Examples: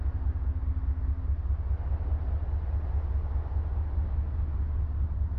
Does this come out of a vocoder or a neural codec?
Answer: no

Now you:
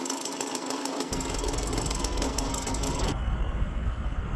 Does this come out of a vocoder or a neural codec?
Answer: yes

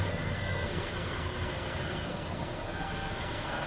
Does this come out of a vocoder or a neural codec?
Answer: yes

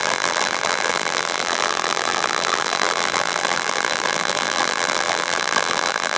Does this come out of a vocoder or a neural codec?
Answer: yes